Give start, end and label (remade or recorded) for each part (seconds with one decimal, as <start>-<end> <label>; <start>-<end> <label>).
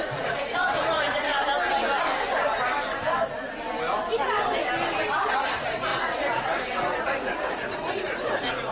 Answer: 0.0-1.3 remade; 1.3-5.3 recorded; 5.3-8.7 remade